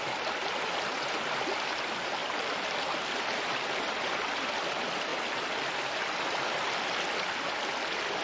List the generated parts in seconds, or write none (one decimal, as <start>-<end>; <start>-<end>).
0.0-8.2

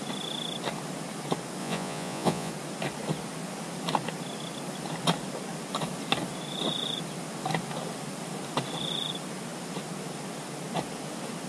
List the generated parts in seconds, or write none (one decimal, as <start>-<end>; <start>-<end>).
1.6-2.5

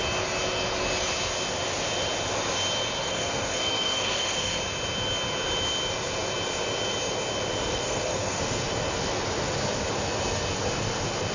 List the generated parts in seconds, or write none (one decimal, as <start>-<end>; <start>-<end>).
3.0-4.6; 7.7-8.4